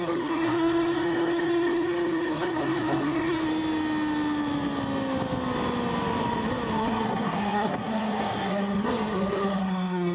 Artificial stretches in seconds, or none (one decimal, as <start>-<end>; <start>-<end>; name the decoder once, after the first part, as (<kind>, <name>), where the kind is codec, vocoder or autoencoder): 0.0-3.4 (codec, SNAC); 6.8-10.1